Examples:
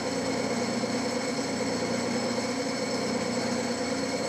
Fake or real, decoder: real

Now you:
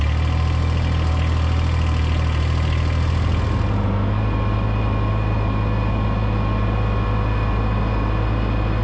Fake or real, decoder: real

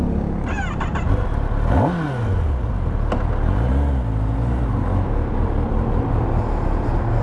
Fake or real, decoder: real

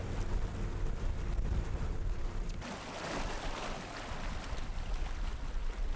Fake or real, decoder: real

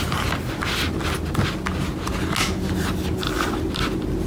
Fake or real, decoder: real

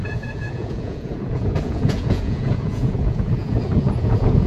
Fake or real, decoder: fake, vocoder, Vocos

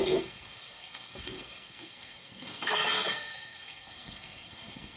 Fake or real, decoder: fake, codec, SNAC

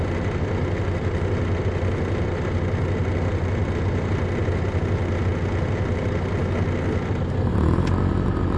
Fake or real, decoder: real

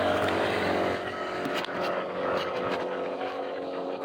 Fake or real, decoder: fake, codec, DAC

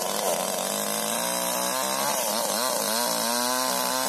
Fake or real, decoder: real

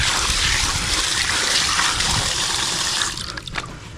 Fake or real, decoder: fake, vocoder, BigVGAN v2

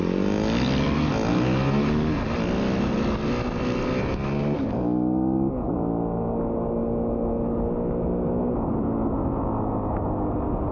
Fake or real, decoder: real